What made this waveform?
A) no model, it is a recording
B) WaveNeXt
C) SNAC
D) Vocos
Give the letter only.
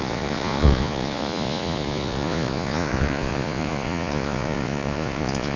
D